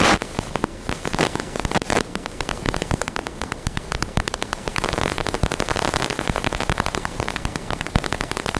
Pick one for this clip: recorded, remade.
remade